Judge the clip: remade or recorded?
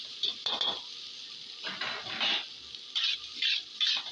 recorded